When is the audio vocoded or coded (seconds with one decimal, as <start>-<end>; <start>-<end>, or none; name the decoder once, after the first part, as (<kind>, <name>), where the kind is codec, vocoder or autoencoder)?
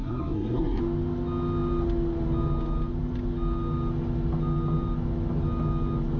0.0-0.8 (codec, SNAC)